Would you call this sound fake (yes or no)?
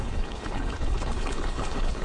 yes